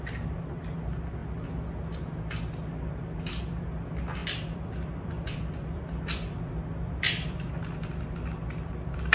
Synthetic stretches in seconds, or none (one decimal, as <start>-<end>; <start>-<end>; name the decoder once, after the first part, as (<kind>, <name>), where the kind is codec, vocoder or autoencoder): 4.2-7.5 (vocoder, BigVGAN v2)